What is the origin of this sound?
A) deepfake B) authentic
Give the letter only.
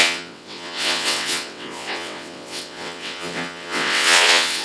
A